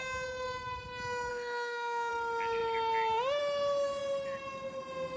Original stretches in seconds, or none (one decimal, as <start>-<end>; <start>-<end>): 0.0-1.3; 2.1-5.2